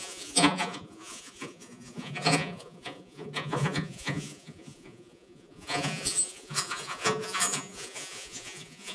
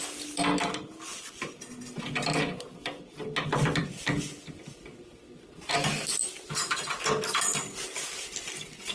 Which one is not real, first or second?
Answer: first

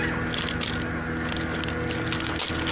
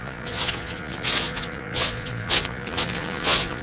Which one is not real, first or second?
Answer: second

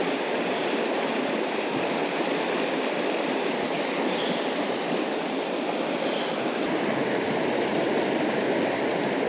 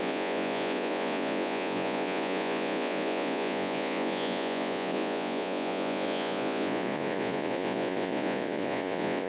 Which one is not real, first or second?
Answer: second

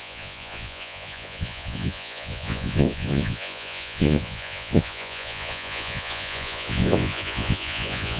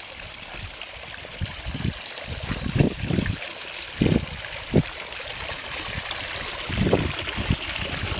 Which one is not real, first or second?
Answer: first